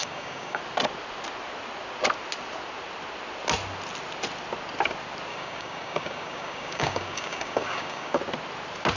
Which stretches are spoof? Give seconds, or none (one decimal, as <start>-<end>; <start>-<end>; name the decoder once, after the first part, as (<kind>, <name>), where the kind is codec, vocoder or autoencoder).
0.0-0.6 (codec, DAC); 5.3-8.2